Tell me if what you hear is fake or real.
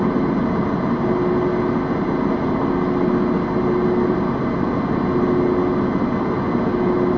real